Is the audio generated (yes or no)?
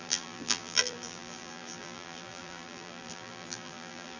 yes